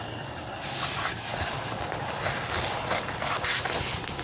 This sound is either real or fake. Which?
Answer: real